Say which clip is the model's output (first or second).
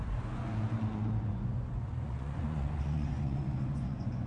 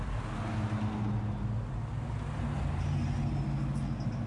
first